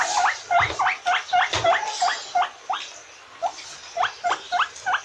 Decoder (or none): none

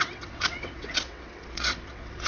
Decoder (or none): vocoder, WaveNeXt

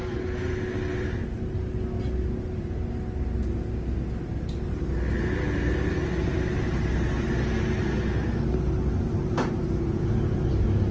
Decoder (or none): none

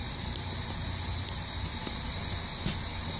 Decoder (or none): none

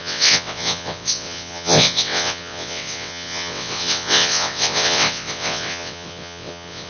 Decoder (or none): vocoder, WaveNeXt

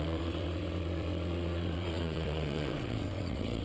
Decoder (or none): vocoder, WaveNeXt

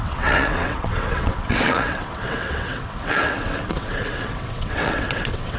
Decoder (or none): vocoder, WaveNeXt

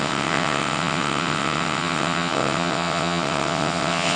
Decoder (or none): vocoder, WaveNeXt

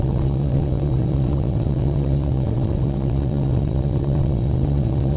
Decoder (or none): vocoder, WaveNeXt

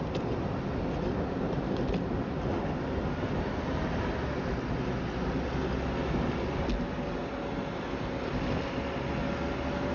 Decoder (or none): none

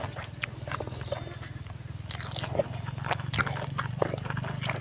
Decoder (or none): none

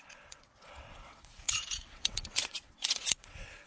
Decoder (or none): vocoder, WaveNeXt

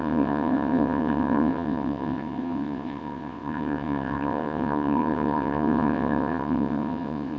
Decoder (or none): vocoder, WaveNeXt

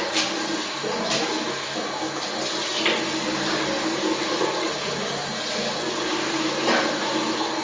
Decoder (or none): none